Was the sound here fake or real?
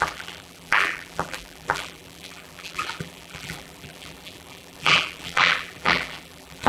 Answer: fake